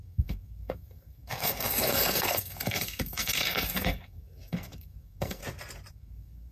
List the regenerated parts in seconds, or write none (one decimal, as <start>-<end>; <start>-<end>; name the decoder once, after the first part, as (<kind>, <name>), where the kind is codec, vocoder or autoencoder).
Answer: 0.0-5.4 (codec, SNAC); 5.9-6.5